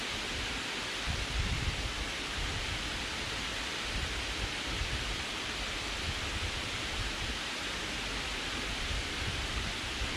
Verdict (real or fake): real